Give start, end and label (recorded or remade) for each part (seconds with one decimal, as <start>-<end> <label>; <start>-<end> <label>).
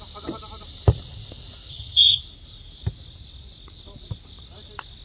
0.0-1.7 recorded; 1.7-2.2 remade; 2.2-5.0 recorded